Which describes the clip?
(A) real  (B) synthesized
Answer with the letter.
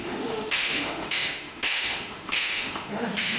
B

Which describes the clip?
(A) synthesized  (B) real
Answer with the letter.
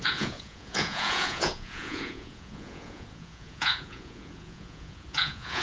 A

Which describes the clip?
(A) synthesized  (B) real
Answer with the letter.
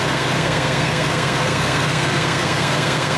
A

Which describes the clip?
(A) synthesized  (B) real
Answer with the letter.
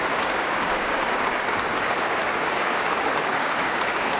A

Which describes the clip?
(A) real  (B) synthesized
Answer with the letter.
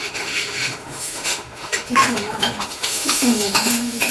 B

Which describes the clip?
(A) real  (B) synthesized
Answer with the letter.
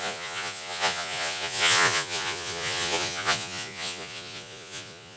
B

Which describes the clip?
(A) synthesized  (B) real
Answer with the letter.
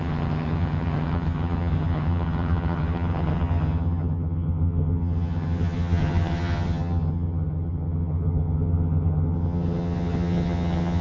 A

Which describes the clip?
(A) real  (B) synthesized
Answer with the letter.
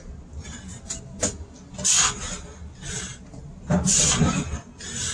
A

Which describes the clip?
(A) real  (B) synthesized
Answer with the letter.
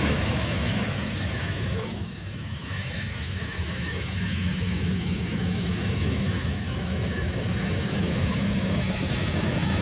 B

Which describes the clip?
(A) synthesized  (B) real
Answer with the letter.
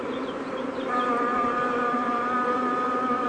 A